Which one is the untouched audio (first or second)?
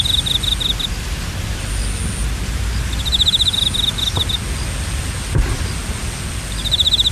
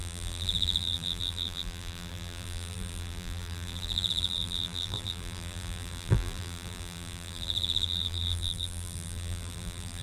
first